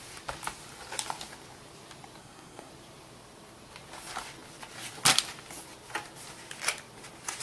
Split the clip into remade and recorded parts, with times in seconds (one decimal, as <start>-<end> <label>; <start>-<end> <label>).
0.0-2.2 recorded; 2.2-2.7 remade; 2.7-7.4 recorded